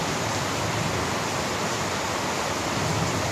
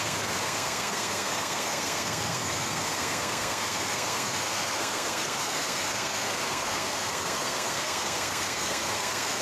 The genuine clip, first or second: first